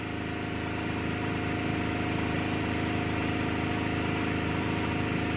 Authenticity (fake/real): real